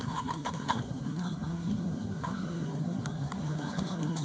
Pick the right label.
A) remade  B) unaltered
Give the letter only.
A